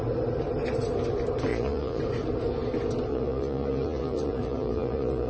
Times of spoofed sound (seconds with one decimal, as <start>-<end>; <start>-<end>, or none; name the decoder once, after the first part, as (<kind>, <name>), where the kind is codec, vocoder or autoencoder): 1.5-2.0 (vocoder, Vocos); 3.1-5.3